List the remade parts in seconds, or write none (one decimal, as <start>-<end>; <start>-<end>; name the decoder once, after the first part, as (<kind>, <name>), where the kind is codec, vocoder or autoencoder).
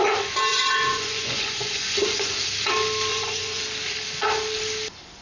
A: 0.5-2.3 (vocoder, Vocos); 3.1-3.6